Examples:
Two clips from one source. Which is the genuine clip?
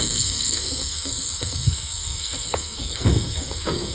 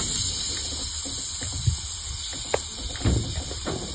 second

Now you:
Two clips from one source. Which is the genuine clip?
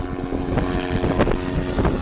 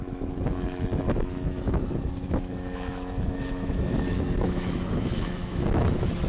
first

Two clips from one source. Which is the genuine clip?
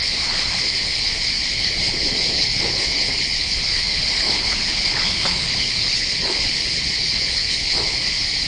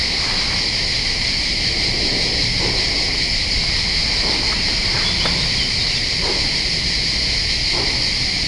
second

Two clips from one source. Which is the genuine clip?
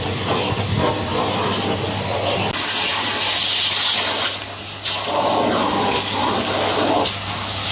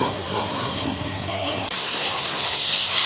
first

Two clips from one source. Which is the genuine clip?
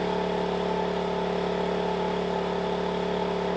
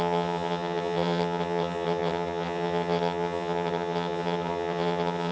first